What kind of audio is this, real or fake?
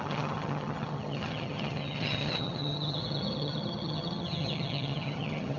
fake